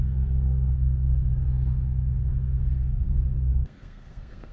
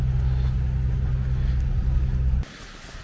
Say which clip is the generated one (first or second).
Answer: first